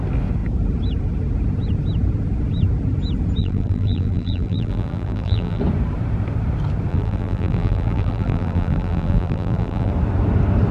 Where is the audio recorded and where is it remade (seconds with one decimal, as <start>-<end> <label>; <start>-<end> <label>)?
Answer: 0.0-3.4 recorded; 3.4-5.6 remade; 5.6-6.9 recorded; 6.9-9.9 remade; 9.9-10.7 recorded